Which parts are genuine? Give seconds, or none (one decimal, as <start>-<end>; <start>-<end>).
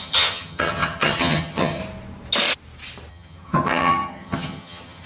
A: 1.8-3.1